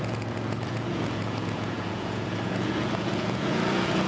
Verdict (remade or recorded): remade